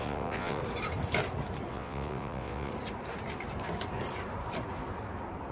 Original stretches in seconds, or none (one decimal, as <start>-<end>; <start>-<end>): 0.6-1.7; 2.7-5.5